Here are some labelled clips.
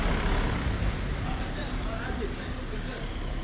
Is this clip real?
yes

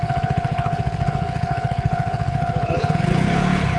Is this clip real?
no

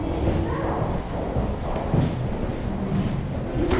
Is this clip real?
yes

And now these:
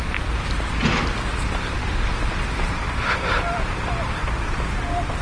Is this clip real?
yes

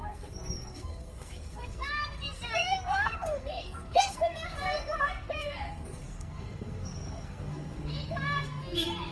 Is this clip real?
no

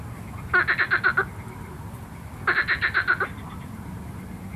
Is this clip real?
yes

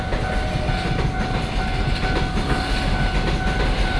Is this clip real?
yes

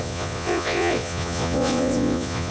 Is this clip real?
no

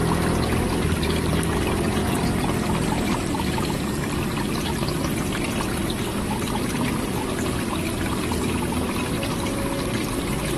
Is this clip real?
no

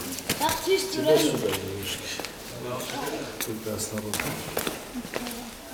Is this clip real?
yes